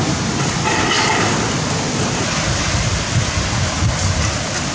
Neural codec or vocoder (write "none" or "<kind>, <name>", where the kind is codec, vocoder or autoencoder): none